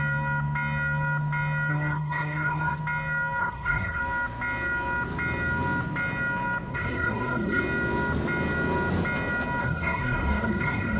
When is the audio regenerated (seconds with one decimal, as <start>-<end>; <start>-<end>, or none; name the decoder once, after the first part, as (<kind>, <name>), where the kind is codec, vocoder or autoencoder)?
1.7-2.8 (codec, SNAC); 3.4-4.0; 6.7-7.6; 9.6-11.0

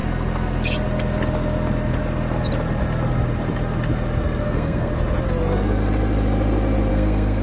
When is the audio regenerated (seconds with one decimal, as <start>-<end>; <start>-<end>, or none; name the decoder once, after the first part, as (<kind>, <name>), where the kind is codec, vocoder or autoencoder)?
4.4-4.9 (codec, SNAC); 6.9-7.4

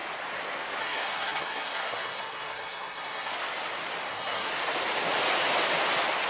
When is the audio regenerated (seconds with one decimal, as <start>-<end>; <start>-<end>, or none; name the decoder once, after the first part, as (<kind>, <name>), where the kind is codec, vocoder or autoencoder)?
0.8-3.3 (codec, SNAC); 4.1-4.5

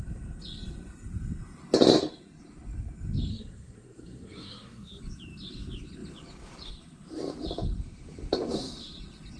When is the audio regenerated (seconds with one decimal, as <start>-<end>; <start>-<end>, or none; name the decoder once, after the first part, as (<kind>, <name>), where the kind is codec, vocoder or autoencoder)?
3.3-5.0 (codec, SNAC)